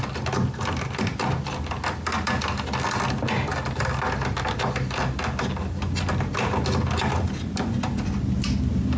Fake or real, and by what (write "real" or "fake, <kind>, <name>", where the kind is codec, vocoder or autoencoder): real